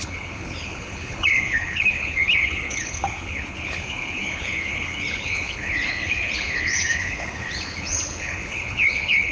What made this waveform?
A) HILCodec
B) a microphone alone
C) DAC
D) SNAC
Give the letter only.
A